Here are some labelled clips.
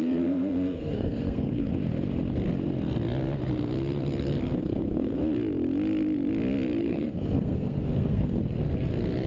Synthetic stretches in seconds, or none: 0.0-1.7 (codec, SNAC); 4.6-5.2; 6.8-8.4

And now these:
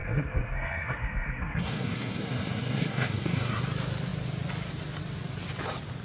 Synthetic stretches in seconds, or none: 0.0-3.6 (codec, SNAC)

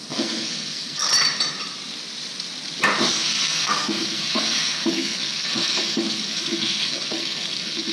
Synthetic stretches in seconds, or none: 0.0-1.1 (codec, SNAC); 3.1-7.9